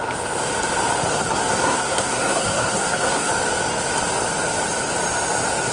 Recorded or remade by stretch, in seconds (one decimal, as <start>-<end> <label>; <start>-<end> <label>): 0.0-1.1 recorded; 1.1-3.3 remade; 3.3-5.7 recorded